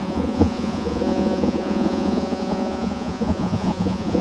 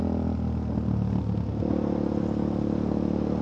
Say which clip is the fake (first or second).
first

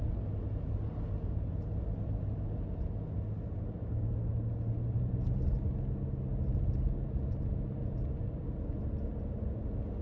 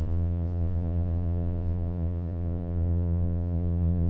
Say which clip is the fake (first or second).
second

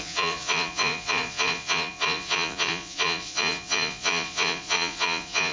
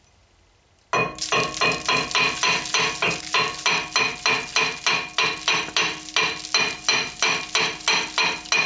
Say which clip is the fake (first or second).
first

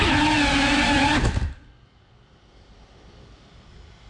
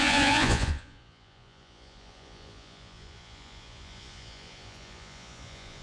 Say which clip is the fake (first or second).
second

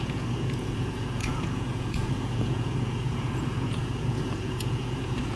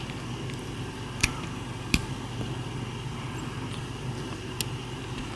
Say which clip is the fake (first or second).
first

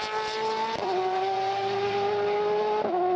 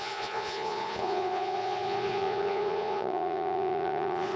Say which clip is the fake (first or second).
second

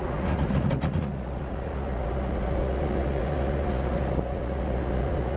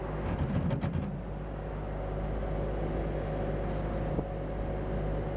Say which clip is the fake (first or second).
first